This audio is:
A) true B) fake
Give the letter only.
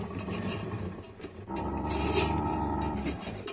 B